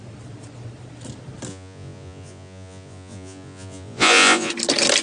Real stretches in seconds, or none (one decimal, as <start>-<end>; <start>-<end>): 0.0-1.5; 4.5-5.0